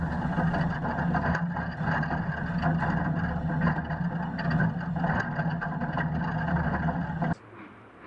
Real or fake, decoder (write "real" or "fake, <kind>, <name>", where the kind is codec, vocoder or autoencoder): real